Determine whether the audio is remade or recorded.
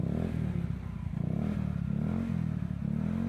recorded